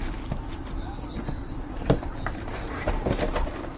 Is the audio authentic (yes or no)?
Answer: yes